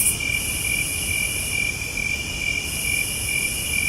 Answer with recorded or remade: recorded